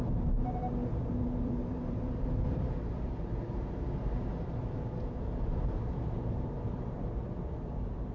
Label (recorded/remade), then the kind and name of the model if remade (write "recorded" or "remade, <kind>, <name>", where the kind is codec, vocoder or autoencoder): remade, vocoder, BigVGAN v2